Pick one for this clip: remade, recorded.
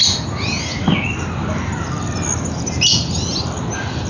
recorded